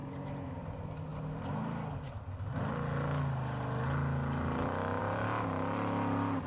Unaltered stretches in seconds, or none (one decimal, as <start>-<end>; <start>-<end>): 0.0-6.5